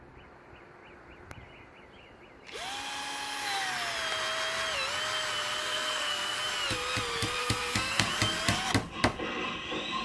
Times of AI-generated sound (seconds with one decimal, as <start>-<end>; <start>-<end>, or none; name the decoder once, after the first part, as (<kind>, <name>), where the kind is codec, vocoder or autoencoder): 5.6-6.4 (codec, SNAC); 7.4-8.1